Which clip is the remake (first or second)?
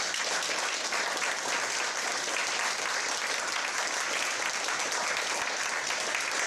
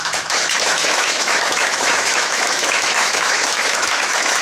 second